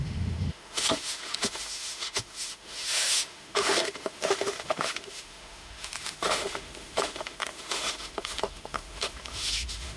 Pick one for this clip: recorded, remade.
remade